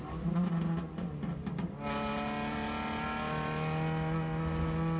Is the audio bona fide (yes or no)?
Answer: yes